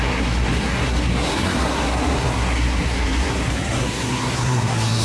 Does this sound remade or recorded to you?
remade